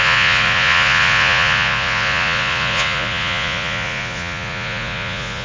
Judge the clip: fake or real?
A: fake